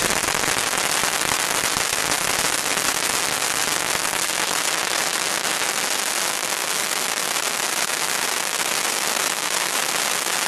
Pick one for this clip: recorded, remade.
recorded